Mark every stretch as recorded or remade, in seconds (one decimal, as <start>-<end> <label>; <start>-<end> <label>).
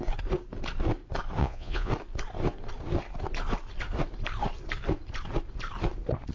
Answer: 0.0-1.4 recorded; 1.4-1.9 remade; 1.9-6.3 recorded